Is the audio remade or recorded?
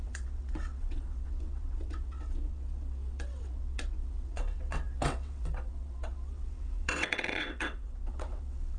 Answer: remade